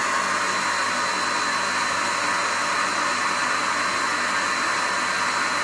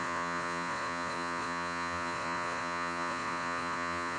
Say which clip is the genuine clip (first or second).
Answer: first